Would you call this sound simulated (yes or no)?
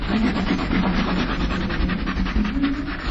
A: no